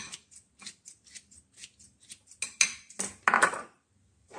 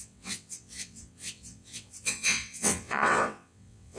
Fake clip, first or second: second